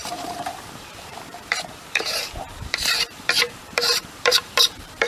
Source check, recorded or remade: remade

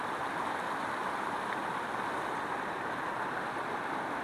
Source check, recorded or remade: recorded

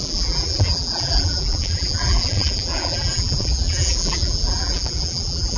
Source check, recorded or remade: remade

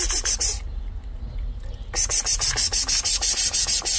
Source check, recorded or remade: recorded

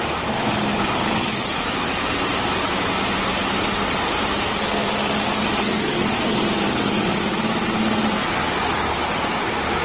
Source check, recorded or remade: recorded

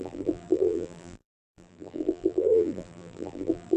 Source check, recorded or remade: remade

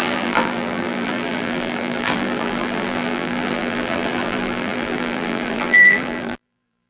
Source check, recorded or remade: remade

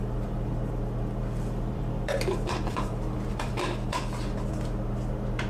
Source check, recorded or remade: remade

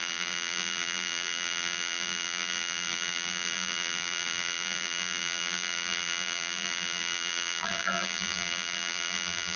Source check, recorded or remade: remade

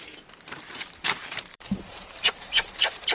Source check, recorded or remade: remade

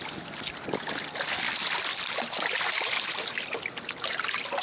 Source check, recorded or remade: recorded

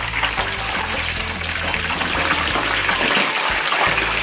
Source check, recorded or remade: recorded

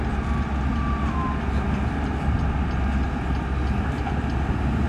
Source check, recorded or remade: recorded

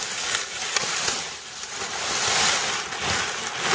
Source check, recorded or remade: recorded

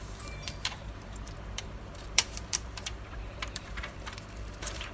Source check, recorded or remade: remade